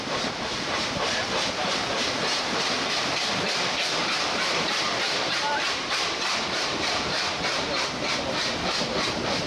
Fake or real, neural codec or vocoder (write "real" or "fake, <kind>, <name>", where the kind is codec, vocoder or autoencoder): fake, vocoder, BigVGAN v2